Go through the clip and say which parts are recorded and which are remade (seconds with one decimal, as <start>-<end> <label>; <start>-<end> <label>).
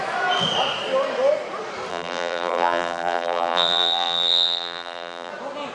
0.0-1.9 recorded; 1.9-5.3 remade; 5.3-5.7 recorded